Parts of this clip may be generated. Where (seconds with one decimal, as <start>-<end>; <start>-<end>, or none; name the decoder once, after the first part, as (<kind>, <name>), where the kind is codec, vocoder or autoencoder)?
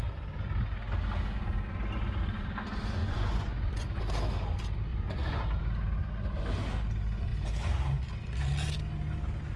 3.0-4.0 (vocoder, Vocos); 4.9-5.4